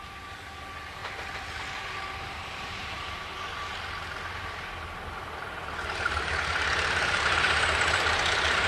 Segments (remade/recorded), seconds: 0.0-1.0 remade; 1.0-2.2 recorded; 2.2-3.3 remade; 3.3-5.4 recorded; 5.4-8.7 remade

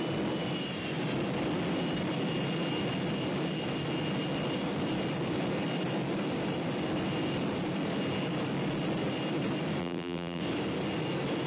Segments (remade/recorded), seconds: 0.0-9.8 recorded; 9.8-10.4 remade; 10.4-11.5 recorded

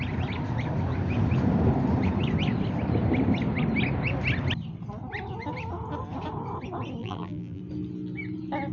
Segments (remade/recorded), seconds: 0.0-7.0 recorded; 7.0-7.6 remade; 7.6-8.7 recorded

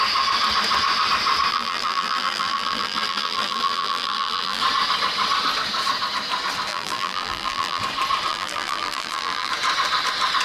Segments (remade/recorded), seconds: 0.0-1.5 recorded; 1.5-4.6 remade; 4.6-6.7 recorded; 6.7-7.8 remade; 7.8-8.3 recorded; 8.3-9.5 remade; 9.5-10.4 recorded

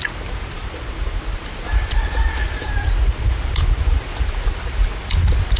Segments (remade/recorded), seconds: 0.0-0.6 recorded; 0.6-4.0 remade; 4.0-5.6 recorded

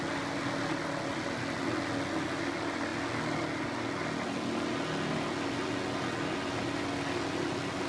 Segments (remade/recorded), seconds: 0.0-7.9 recorded